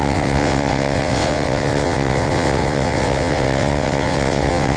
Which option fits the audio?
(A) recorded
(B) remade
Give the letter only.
B